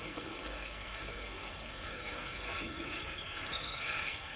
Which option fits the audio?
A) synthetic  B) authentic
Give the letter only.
A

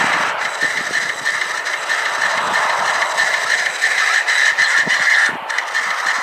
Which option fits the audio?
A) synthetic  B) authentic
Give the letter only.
B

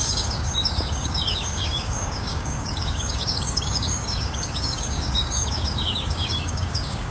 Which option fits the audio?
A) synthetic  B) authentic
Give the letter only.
A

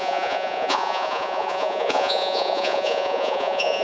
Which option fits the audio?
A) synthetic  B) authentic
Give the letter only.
A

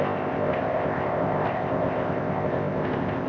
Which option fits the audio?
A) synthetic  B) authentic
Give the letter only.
A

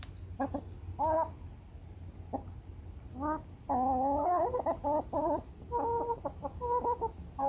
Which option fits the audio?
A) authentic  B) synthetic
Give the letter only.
A